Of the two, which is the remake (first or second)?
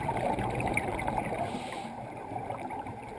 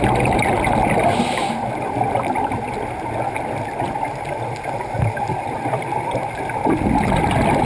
first